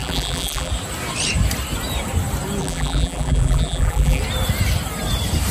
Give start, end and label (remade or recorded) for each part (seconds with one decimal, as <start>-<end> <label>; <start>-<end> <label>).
0.0-0.7 remade; 0.7-2.6 recorded; 2.6-4.2 remade; 4.2-5.5 recorded